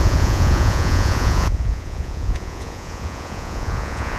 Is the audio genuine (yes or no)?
no